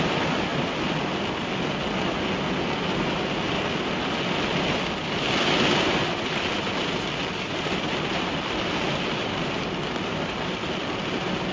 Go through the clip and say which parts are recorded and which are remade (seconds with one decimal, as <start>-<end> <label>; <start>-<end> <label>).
0.0-11.5 recorded